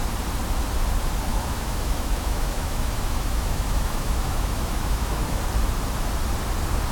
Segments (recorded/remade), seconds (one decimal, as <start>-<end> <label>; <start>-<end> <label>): 0.0-1.3 recorded; 1.3-5.4 remade; 5.4-6.9 recorded